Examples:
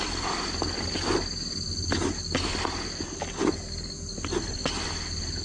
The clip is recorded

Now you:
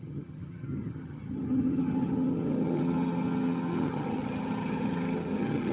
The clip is remade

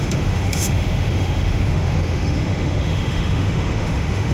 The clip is remade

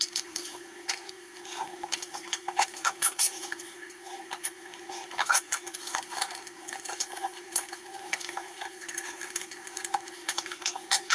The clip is remade